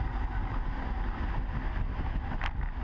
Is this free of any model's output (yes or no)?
yes